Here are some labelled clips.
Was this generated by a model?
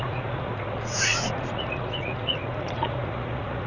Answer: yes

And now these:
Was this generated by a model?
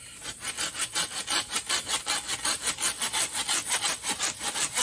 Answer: no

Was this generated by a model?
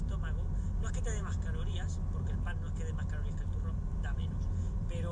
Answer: no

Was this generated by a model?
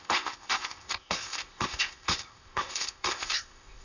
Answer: yes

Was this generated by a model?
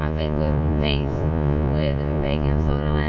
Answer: yes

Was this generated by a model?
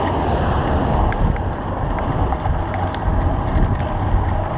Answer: no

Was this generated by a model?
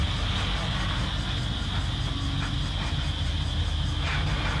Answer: no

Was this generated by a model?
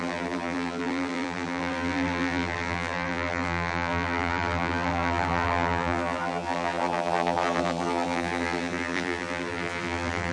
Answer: yes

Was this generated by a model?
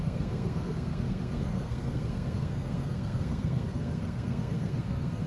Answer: yes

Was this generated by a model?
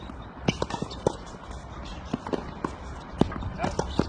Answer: no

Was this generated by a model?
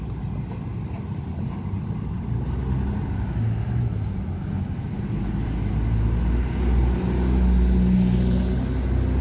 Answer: no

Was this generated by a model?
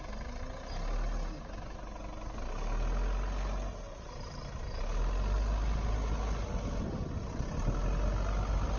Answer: no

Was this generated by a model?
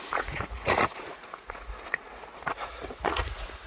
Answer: yes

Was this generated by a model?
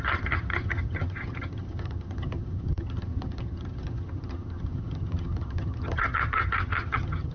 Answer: yes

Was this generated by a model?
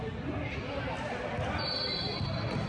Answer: no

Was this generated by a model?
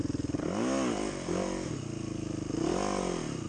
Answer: no